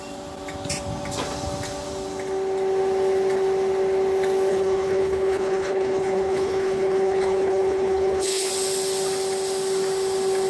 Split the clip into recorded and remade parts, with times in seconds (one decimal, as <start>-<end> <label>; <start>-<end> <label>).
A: 0.0-4.5 recorded; 4.5-8.5 remade; 8.5-10.5 recorded